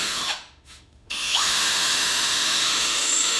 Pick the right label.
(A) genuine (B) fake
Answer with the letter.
B